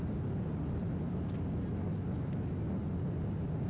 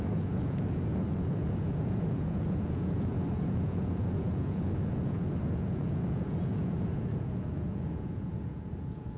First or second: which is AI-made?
second